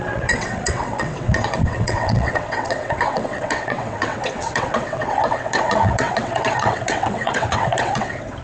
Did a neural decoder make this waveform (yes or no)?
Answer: yes